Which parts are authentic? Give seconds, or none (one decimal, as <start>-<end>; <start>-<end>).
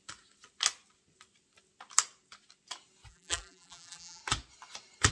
0.0-3.1; 4.2-5.1